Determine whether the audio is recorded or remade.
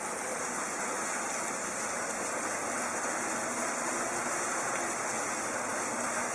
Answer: recorded